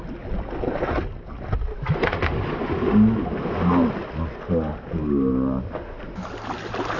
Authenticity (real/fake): real